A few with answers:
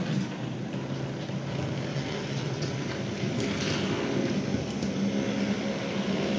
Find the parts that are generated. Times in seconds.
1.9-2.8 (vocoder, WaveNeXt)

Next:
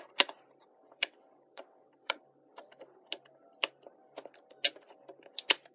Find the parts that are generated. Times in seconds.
0.7-2.2 (vocoder, WaveNeXt)

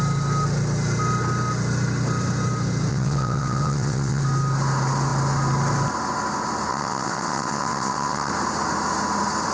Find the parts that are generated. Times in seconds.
2.9-4.2 (vocoder, WaveNeXt); 6.7-8.3

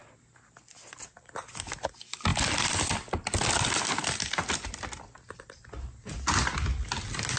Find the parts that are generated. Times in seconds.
none